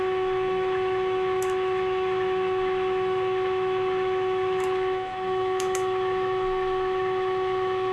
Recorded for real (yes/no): no